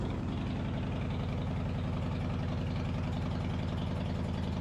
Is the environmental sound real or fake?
real